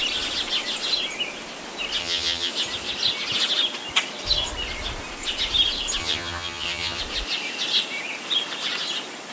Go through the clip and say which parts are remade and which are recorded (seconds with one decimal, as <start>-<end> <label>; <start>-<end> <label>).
0.0-2.0 recorded; 2.0-2.5 remade; 2.5-6.0 recorded; 6.0-7.0 remade; 7.0-9.3 recorded